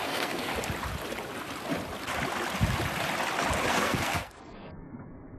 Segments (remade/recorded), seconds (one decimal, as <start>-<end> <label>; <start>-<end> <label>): 0.0-0.5 remade; 0.5-3.7 recorded; 3.7-5.4 remade